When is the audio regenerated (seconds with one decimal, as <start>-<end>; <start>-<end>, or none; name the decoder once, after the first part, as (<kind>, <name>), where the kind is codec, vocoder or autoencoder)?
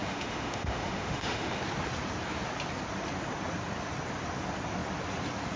0.0-1.6 (autoencoder, DAC-VAE)